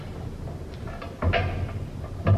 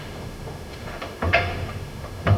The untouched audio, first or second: first